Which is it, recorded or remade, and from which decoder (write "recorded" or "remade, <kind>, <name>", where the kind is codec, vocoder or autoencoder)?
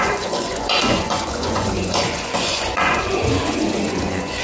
remade, vocoder, Vocos